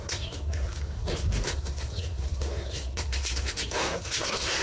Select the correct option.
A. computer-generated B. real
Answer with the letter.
A